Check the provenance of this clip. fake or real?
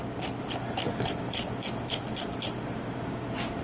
real